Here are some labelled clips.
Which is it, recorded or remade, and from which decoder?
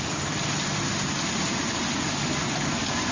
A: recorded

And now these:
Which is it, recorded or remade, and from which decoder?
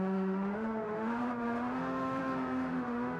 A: remade, autoencoder, DAC-VAE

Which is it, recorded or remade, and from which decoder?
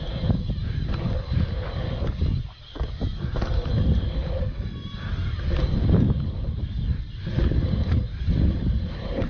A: recorded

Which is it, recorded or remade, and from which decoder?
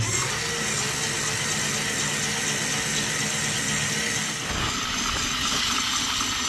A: recorded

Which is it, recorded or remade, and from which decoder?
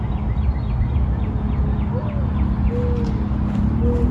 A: recorded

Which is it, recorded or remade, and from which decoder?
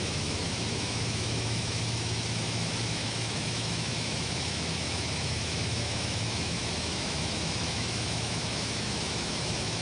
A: remade, autoencoder, DAC-VAE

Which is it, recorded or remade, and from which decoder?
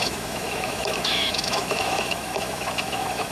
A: remade, autoencoder, DAC-VAE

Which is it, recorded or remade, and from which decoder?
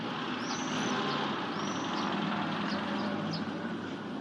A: recorded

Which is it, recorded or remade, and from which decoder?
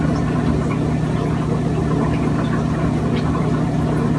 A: recorded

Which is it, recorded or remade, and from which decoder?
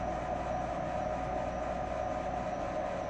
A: recorded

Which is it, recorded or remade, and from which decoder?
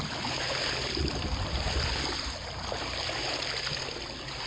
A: recorded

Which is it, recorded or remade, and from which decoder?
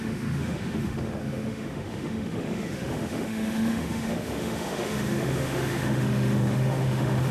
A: remade, autoencoder, DAC-VAE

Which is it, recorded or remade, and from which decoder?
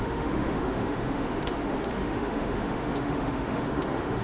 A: remade, autoencoder, DAC-VAE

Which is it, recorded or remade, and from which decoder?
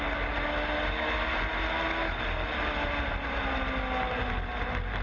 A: recorded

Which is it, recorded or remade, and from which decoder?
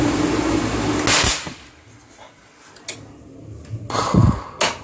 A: recorded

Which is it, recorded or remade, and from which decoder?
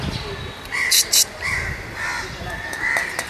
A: recorded